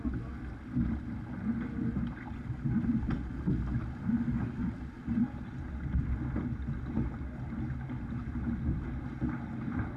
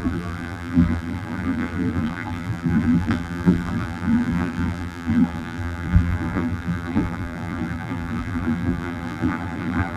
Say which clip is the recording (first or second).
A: first